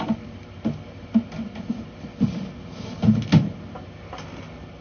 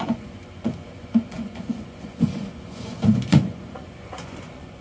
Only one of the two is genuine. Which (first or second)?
first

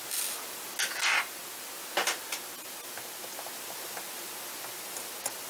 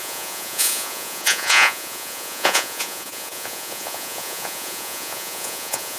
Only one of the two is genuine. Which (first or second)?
first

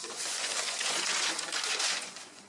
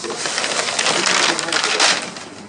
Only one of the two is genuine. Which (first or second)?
second